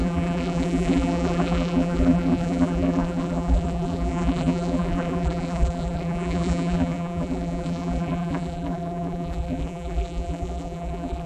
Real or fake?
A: fake